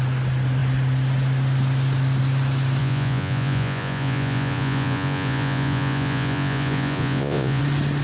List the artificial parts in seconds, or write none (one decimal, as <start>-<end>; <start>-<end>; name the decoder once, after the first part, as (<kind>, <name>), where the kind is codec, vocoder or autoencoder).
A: 2.8-7.6 (vocoder, Vocos)